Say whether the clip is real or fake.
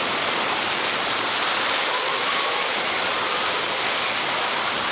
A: real